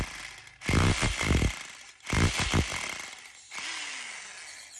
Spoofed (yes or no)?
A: no